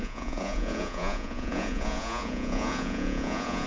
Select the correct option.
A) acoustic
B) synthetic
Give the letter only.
B